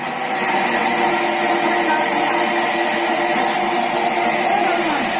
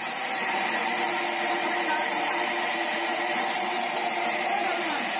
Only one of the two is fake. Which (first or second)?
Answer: second